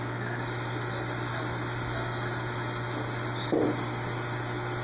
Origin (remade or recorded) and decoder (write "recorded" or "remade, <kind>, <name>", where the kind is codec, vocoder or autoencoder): recorded